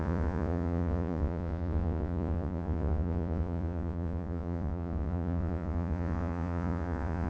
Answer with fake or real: fake